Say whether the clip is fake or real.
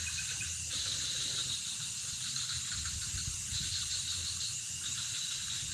real